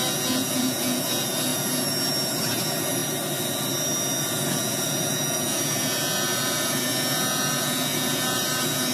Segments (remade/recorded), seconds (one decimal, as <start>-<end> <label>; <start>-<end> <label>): 0.0-3.0 remade; 3.0-4.2 recorded; 4.2-8.9 remade